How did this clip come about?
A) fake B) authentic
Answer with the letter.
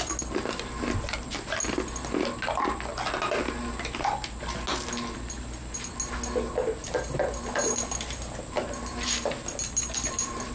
B